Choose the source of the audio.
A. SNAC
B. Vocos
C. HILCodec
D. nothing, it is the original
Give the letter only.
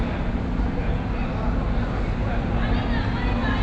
D